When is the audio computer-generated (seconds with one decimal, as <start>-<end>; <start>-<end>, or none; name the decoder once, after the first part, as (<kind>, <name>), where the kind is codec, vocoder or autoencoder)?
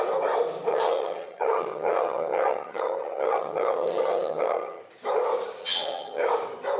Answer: 0.7-4.8 (vocoder, HiFi-GAN); 5.6-6.2